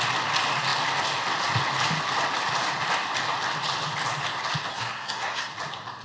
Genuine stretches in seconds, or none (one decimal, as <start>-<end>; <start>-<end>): 0.0-4.7; 5.5-6.0